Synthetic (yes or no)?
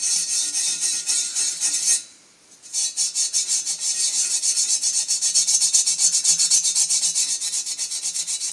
no